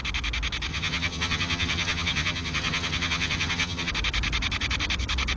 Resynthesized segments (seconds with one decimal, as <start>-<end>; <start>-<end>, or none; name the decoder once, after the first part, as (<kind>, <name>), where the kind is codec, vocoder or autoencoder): 0.7-3.9 (vocoder, HiFi-GAN)